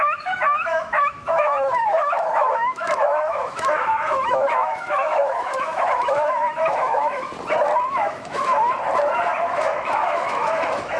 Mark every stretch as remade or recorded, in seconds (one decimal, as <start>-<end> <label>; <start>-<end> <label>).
0.0-7.3 remade; 7.3-7.9 recorded; 7.9-8.5 remade; 8.5-9.4 recorded; 9.4-11.0 remade